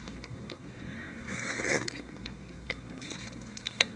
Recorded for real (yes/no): no